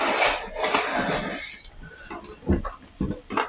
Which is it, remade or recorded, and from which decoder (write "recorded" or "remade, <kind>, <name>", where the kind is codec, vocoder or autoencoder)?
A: recorded